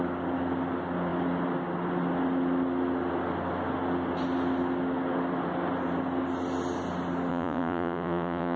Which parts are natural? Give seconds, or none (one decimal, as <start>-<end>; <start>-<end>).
0.0-7.3